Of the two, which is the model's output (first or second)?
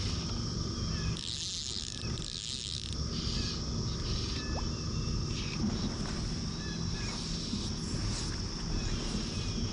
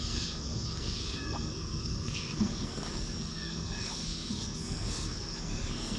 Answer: second